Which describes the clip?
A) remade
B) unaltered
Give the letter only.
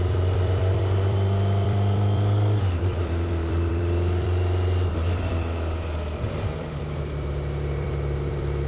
A